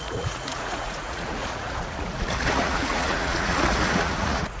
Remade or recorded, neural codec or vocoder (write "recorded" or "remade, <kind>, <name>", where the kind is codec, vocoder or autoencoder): remade, vocoder, Vocos